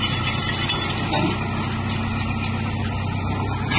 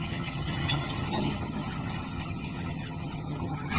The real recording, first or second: first